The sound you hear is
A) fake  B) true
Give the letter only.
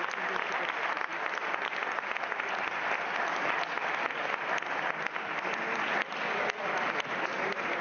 B